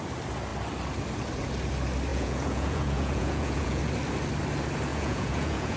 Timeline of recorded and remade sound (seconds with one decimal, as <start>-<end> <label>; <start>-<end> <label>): 0.0-2.1 recorded; 2.1-3.8 remade; 3.8-4.9 recorded; 4.9-5.8 remade